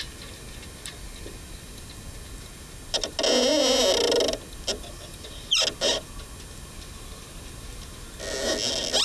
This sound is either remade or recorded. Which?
recorded